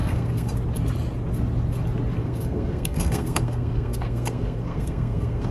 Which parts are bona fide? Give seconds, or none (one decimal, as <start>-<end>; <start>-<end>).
0.5-2.2